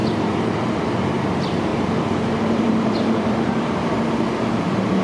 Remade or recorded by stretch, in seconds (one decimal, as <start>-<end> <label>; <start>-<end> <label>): 0.0-0.8 remade; 0.8-1.7 recorded; 1.7-4.1 remade; 4.1-5.0 recorded